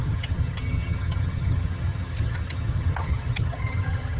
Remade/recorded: remade